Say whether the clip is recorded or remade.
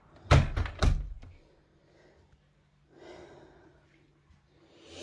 recorded